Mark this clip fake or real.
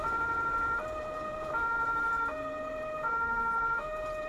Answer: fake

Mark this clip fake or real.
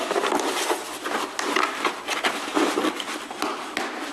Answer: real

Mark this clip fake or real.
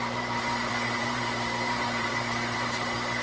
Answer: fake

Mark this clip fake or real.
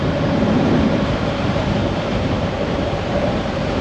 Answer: fake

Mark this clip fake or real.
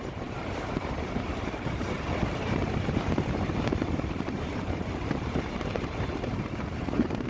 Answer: fake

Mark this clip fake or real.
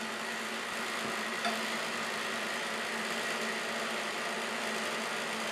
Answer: real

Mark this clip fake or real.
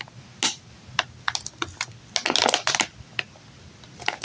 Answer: real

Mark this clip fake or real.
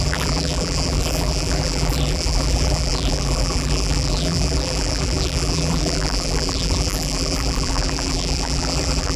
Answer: fake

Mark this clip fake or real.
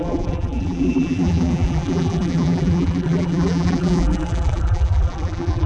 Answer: fake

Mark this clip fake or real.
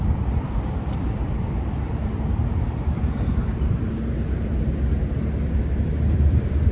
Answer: fake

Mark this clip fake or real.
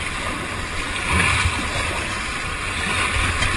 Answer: real